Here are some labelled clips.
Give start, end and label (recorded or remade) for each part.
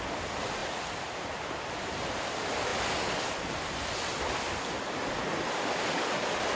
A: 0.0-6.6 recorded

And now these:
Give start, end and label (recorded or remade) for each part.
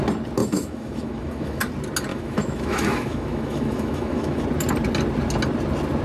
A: 0.0-0.4 recorded; 0.4-1.6 remade; 1.6-2.1 recorded; 2.1-4.4 remade; 4.4-6.0 recorded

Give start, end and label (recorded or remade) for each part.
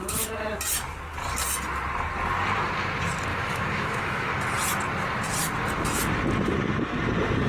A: 0.0-3.3 recorded; 3.3-4.3 remade; 4.3-7.5 recorded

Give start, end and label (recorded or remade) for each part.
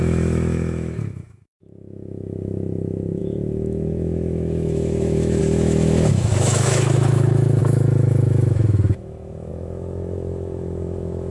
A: 0.0-11.3 remade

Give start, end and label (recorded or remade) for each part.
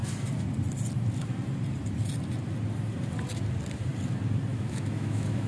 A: 0.0-4.5 recorded; 4.5-5.5 remade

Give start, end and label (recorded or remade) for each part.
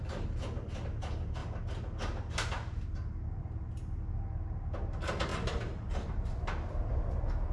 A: 0.0-7.5 recorded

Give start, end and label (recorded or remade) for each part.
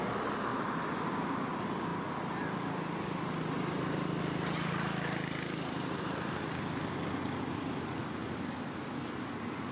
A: 0.0-9.7 recorded